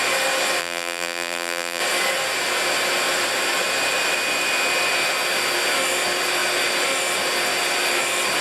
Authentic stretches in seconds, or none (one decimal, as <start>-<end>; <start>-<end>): 0.0-0.6; 1.8-8.4